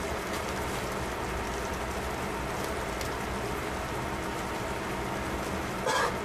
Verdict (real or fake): real